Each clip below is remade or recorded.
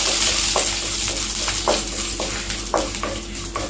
recorded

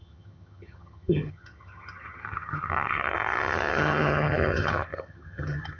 remade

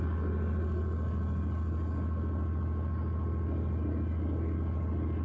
recorded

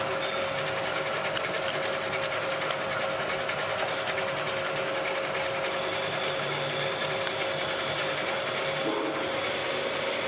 recorded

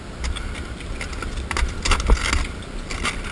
recorded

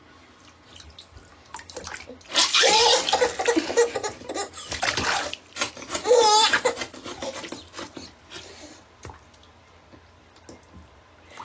recorded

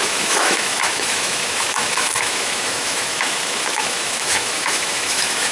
remade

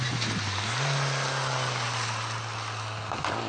recorded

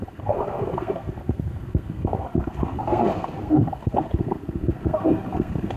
remade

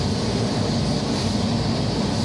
recorded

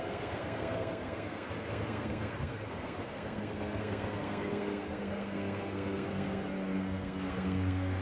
remade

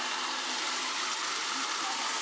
remade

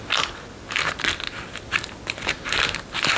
recorded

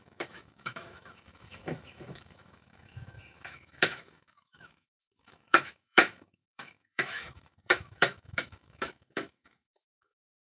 remade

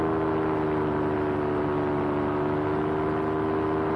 recorded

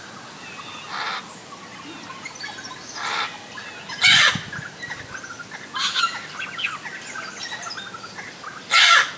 recorded